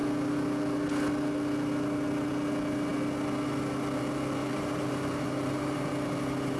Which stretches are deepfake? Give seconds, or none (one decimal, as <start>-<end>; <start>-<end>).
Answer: 4.4-5.9